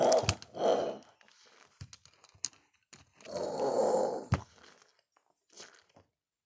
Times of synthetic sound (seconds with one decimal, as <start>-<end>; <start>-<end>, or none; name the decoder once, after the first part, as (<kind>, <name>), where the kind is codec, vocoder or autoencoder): none